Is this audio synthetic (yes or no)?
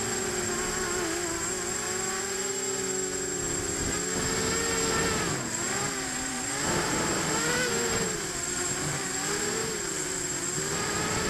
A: no